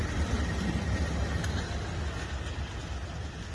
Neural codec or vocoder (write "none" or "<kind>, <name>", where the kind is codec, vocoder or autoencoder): none